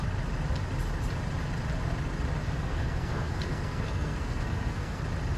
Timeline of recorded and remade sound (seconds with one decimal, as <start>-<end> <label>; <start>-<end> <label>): 0.0-2.4 recorded; 2.4-5.0 remade; 5.0-5.4 recorded